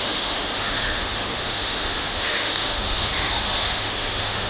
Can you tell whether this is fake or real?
fake